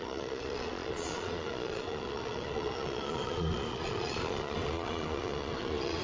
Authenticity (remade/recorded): remade